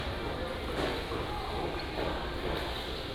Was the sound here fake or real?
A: real